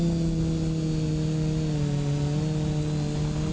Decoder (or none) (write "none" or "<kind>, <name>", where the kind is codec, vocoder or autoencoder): none